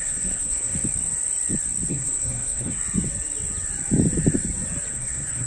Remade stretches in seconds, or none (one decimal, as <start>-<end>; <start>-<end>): 0.0-0.7; 1.9-2.8; 4.9-5.5